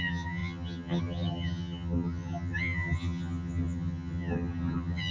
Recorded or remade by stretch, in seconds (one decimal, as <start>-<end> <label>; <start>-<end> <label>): 0.0-5.1 remade

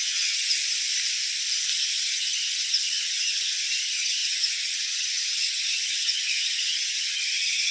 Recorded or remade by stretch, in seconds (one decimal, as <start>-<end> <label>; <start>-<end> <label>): 0.0-0.6 remade; 0.6-1.7 recorded; 1.7-7.7 remade

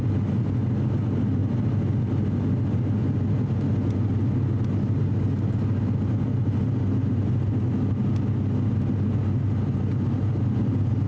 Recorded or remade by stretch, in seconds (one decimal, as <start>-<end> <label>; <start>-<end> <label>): 0.0-11.1 recorded

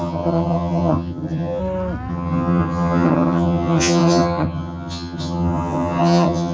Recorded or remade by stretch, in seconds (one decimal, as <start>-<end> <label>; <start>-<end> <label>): 0.0-1.6 remade; 1.6-2.1 recorded; 2.1-6.5 remade